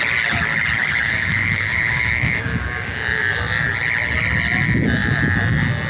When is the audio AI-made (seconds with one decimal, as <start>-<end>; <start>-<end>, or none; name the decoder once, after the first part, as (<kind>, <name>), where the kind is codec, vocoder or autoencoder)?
0.8-3.2 (codec, DAC)